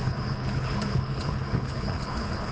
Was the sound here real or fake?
fake